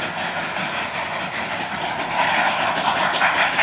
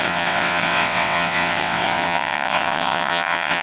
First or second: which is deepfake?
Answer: second